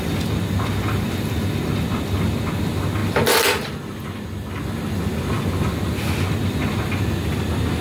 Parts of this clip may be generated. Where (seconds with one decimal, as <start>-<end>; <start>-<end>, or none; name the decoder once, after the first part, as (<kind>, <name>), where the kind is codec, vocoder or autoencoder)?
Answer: none